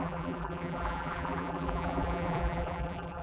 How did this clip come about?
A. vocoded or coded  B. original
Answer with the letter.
A